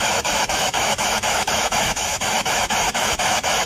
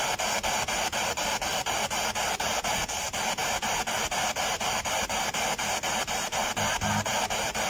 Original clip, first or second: second